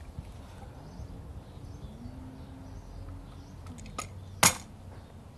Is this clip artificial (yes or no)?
no